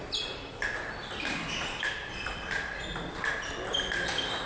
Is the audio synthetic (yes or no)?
no